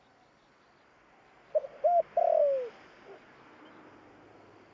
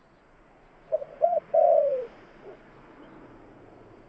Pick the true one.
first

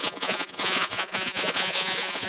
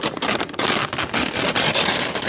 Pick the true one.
second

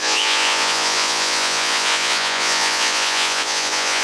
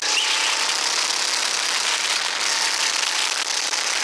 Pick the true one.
second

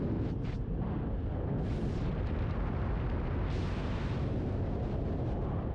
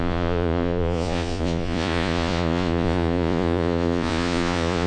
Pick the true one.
first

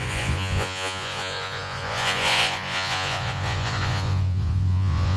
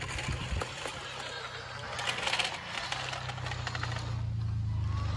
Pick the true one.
second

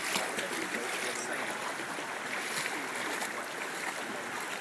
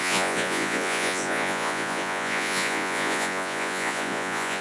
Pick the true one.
first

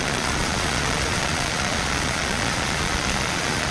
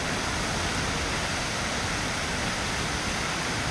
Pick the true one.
second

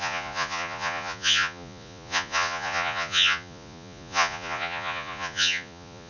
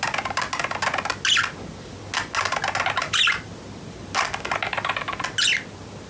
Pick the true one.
second